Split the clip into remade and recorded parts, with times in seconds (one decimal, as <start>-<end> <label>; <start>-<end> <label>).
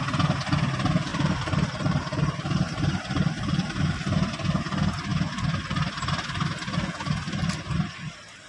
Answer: 0.0-1.1 recorded; 1.1-3.8 remade; 3.8-8.5 recorded